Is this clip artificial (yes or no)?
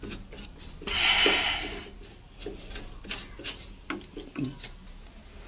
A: no